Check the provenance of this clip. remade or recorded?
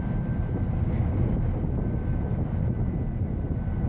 recorded